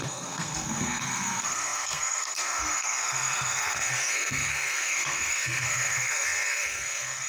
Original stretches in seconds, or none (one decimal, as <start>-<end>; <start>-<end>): none

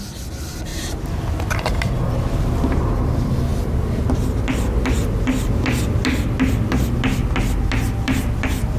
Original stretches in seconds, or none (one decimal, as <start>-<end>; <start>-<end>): 0.0-0.7; 1.3-8.8

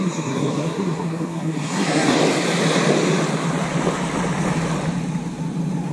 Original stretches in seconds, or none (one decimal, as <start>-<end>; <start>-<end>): 2.2-5.9

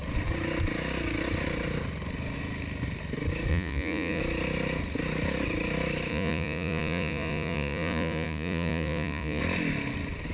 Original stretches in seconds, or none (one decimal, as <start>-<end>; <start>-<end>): 0.0-3.5; 4.2-6.1; 9.4-10.3

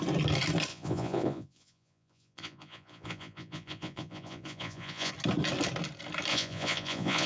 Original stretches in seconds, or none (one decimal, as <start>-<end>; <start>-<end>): 0.0-0.7; 5.1-6.3

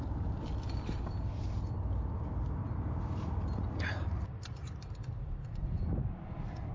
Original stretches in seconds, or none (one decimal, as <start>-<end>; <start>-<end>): 0.0-2.6; 5.6-6.7

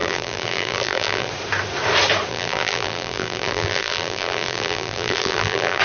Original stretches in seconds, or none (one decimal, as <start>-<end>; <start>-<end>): 1.3-2.3